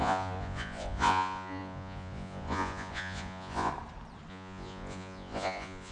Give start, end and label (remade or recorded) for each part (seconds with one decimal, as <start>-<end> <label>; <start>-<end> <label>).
0.0-3.7 remade; 3.7-4.3 recorded; 4.3-5.9 remade